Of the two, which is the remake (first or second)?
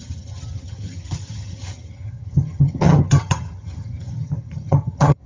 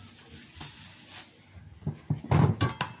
first